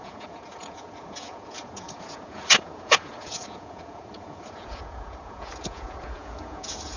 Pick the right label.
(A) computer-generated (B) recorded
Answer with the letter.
A